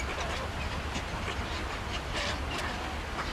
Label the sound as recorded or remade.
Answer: recorded